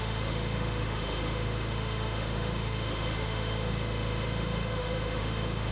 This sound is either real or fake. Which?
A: fake